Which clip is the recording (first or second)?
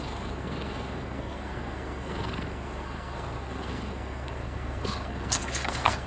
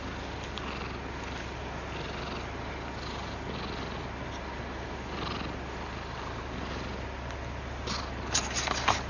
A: second